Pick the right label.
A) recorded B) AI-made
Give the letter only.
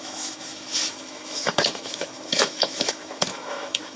B